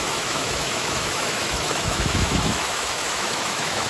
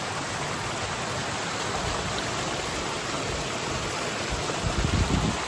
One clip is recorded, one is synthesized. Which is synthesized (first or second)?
first